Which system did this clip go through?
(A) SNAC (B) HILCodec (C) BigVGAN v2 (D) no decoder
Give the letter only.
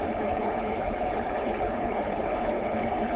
B